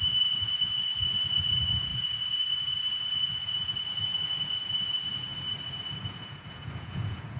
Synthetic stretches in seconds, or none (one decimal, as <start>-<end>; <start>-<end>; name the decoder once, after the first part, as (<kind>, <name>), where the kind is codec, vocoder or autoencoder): 0.0-5.3 (vocoder, Vocos); 6.0-7.4